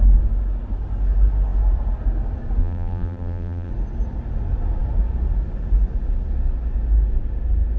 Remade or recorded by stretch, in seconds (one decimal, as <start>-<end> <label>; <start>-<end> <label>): 0.0-2.6 recorded; 2.6-3.7 remade; 3.7-7.8 recorded